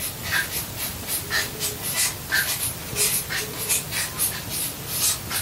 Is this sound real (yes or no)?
yes